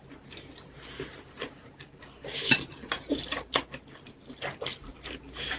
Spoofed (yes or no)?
no